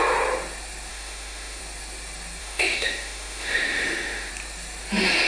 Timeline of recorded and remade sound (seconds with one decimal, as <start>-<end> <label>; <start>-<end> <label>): 0.0-0.9 recorded; 0.9-1.6 remade; 1.6-2.4 recorded; 2.4-4.3 remade; 4.3-5.3 recorded